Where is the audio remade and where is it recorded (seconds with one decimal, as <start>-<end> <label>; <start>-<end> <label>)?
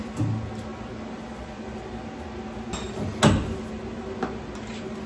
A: 0.0-5.1 recorded